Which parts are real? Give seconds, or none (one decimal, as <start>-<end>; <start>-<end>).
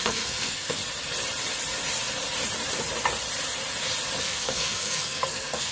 0.8-4.2